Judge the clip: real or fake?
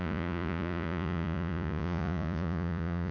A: fake